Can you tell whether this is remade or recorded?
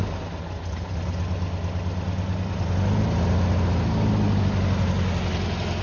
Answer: recorded